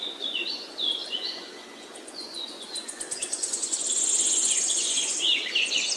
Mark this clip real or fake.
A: fake